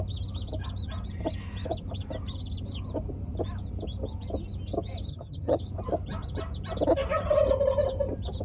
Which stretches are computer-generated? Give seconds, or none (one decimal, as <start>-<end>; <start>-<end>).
5.1-5.6